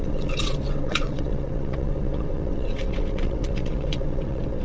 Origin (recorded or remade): remade